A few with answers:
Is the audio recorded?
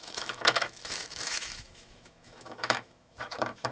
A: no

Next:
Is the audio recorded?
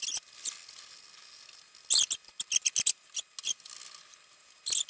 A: yes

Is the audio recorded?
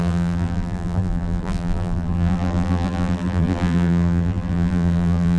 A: no